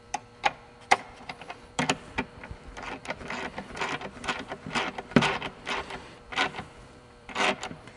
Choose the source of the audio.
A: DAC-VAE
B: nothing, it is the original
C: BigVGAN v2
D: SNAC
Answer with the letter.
C